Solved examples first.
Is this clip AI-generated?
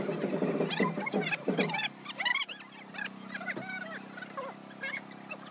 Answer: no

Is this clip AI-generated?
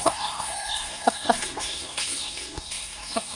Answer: yes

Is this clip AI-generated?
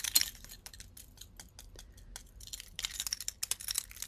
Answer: no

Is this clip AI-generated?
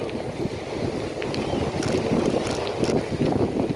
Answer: no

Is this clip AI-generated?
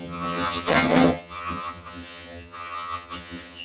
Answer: yes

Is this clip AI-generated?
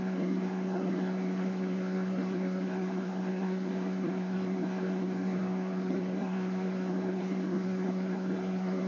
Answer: yes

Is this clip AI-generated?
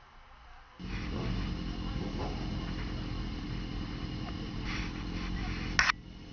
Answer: no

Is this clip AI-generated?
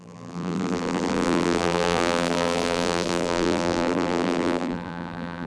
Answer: yes